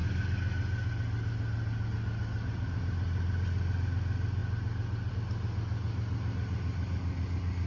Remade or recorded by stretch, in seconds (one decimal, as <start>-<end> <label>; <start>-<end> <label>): 0.0-7.7 recorded